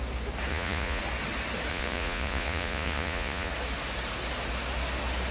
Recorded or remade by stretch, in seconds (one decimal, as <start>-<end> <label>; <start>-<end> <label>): 0.0-0.5 recorded; 0.5-1.0 remade; 1.0-1.7 recorded; 1.7-3.5 remade; 3.5-5.3 recorded